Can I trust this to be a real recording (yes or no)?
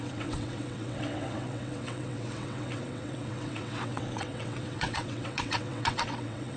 no